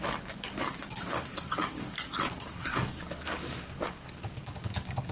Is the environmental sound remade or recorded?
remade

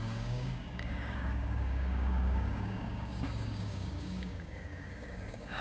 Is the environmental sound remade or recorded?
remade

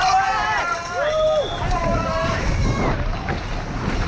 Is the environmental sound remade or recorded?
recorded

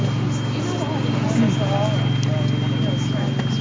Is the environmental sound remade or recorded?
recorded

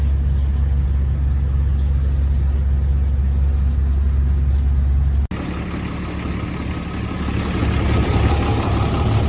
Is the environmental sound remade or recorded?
recorded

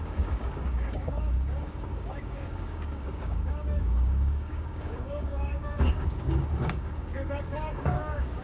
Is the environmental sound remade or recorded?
remade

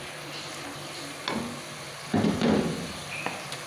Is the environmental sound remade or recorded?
recorded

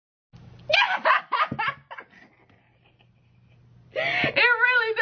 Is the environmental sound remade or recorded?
recorded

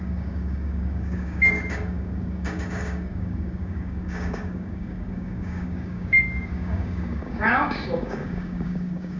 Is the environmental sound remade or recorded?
remade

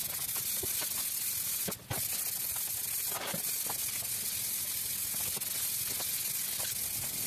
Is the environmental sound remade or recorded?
recorded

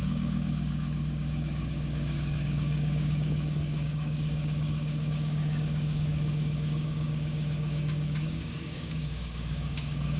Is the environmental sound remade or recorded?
remade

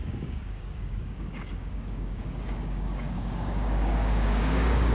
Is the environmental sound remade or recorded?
remade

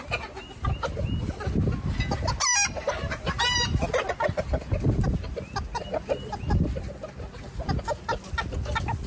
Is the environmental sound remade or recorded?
recorded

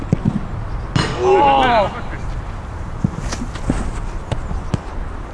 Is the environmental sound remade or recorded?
recorded